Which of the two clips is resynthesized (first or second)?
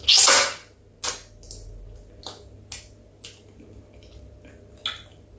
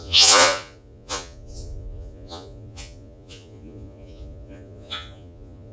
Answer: second